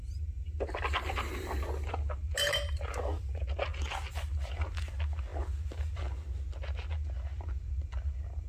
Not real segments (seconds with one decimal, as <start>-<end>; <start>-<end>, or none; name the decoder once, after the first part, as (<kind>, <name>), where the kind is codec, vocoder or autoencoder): none

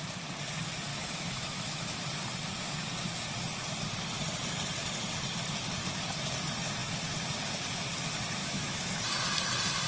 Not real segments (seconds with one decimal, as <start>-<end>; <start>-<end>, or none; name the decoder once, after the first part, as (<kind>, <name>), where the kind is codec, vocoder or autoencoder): 0.9-2.0 (autoencoder, DAC-VAE); 8.4-9.0

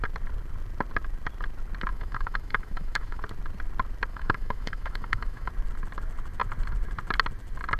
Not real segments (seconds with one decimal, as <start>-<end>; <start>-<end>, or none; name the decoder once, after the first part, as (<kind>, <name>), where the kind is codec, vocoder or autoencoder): 1.9-3.2 (autoencoder, DAC-VAE); 4.1-5.5

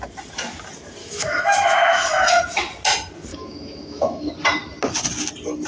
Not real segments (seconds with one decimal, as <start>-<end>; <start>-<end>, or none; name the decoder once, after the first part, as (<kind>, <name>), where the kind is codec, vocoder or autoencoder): 1.0-2.4 (autoencoder, DAC-VAE); 3.3-4.3

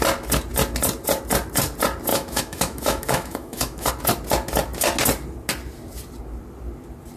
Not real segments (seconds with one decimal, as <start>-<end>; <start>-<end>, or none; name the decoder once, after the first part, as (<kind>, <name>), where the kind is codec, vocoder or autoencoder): 2.1-3.9 (autoencoder, DAC-VAE)

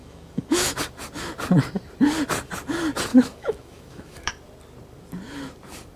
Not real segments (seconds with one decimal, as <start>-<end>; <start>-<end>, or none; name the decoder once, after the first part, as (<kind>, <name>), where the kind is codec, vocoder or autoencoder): 0.0-0.7 (autoencoder, DAC-VAE); 3.1-4.3

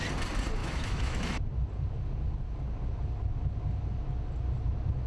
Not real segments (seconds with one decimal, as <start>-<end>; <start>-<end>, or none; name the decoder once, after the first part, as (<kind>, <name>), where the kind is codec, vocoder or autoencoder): 0.6-1.4 (autoencoder, DAC-VAE)

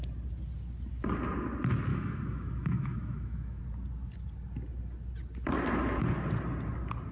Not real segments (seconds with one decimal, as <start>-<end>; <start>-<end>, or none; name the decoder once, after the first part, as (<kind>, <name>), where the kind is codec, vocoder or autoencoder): 1.9-3.6 (autoencoder, DAC-VAE)